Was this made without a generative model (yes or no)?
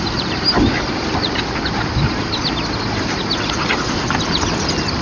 yes